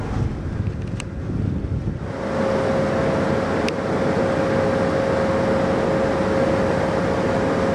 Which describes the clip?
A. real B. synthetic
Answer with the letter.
A